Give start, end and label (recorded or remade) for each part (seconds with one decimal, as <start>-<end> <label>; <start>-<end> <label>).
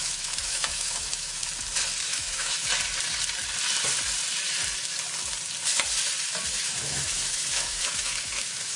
0.0-1.4 remade; 1.4-2.0 recorded; 2.0-2.7 remade; 2.7-6.5 recorded; 6.5-8.8 remade